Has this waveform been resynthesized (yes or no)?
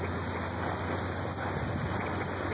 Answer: no